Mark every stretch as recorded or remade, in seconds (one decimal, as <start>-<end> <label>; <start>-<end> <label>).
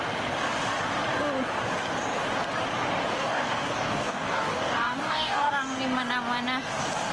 0.0-3.1 recorded; 3.1-5.5 remade; 5.5-7.1 recorded